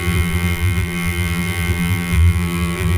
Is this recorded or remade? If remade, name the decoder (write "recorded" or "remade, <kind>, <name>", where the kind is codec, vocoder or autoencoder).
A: remade, vocoder, BigVGAN v2